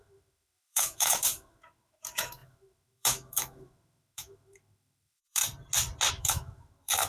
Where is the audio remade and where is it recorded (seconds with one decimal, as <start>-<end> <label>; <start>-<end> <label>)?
0.0-5.4 remade; 5.4-6.1 recorded; 6.1-7.1 remade